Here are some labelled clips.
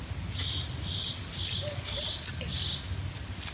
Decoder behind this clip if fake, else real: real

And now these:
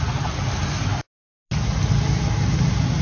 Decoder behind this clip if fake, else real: real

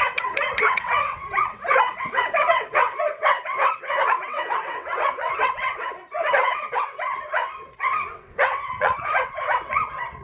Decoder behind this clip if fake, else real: fake, vocoder, WaveNeXt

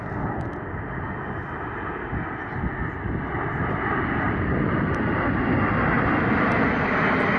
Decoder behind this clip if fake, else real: real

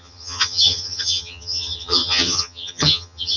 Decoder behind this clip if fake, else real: fake, vocoder, HiFi-GAN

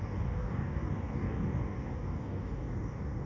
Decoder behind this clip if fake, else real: fake, codec, DAC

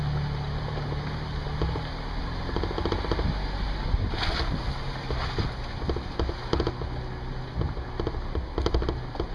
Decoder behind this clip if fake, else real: real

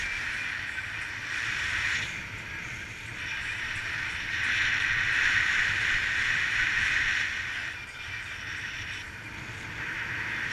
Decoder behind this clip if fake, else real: real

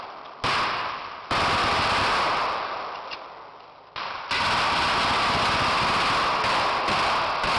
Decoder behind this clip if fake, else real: real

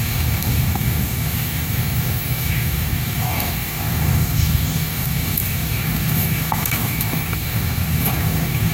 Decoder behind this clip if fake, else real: fake, codec, DAC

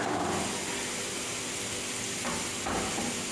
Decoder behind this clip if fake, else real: real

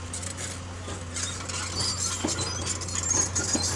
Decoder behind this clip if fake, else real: real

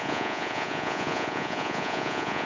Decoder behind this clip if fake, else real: fake, vocoder, Vocos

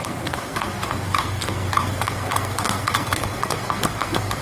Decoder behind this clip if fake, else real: fake, codec, SNAC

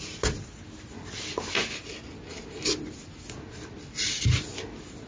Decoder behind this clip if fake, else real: real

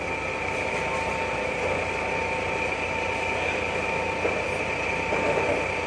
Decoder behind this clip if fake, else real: real